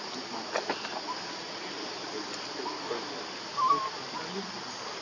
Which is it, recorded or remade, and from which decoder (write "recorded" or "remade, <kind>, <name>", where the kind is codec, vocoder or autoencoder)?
recorded